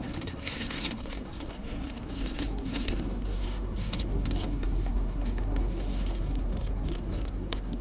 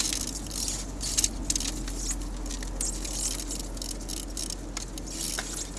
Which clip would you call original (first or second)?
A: second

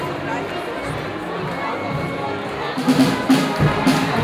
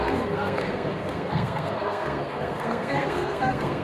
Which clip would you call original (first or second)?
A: first